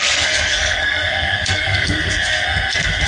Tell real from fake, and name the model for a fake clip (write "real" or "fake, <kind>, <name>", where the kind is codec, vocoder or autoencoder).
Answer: fake, codec, SNAC